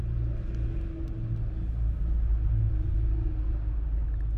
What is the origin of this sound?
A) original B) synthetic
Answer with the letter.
A